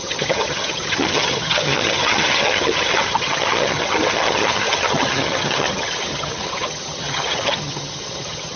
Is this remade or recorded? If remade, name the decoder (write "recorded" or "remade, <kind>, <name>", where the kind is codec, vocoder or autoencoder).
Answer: remade, vocoder, HiFi-GAN